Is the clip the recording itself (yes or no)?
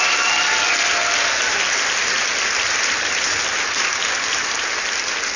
yes